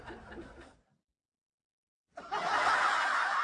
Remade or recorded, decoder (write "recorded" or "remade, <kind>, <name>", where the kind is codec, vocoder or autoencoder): recorded